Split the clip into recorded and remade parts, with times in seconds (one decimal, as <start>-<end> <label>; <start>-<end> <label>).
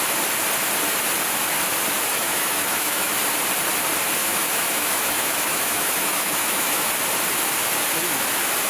0.0-2.1 recorded; 2.1-3.1 remade; 3.1-4.2 recorded; 4.2-6.9 remade; 6.9-8.7 recorded